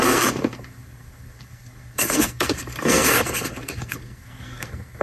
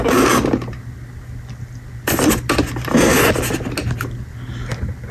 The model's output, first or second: first